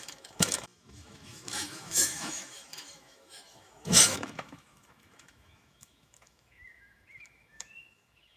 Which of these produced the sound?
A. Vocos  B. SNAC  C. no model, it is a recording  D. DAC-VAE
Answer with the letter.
D